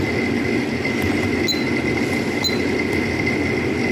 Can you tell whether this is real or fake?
real